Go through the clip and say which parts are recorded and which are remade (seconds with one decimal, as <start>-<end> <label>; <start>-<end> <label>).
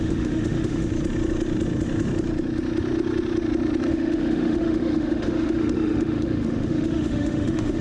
0.0-0.9 remade; 0.9-3.9 recorded; 3.9-7.8 remade